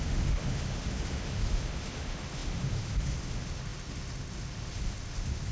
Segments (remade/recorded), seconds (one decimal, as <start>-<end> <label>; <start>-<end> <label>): 0.0-5.5 remade